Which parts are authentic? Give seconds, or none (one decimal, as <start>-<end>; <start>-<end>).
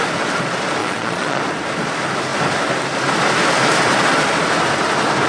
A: 0.0-0.8; 1.4-5.3